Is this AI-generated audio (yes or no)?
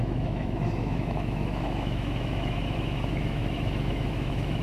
yes